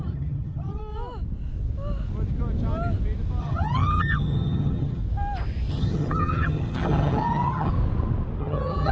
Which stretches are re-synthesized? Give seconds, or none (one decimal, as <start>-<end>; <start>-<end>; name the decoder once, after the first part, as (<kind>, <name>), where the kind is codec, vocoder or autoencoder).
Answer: 0.0-0.8 (vocoder, HiFi-GAN); 3.4-5.0; 5.7-7.7; 8.4-8.9